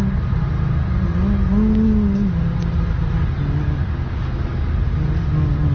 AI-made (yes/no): no